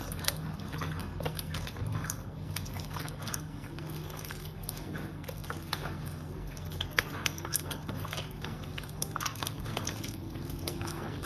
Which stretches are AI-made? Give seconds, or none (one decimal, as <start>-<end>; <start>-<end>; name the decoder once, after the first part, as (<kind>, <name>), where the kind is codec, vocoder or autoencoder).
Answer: 0.0-11.3 (codec, SNAC)